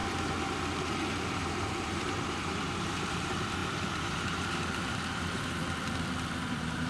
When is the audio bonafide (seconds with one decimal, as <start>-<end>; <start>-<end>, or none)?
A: 0.0-0.8; 5.6-6.5